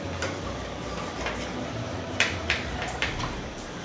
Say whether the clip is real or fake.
fake